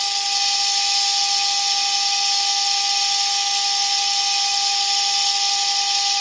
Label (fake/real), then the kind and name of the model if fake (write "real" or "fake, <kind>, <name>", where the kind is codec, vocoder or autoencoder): real